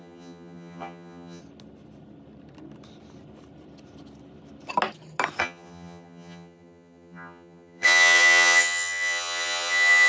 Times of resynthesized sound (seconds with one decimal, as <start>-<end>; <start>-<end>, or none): 0.0-1.4; 5.4-10.1